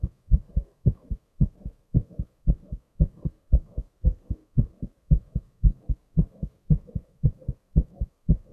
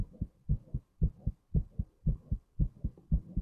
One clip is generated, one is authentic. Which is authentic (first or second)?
second